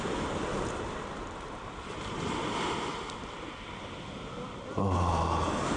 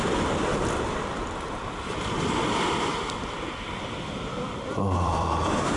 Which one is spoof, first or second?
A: second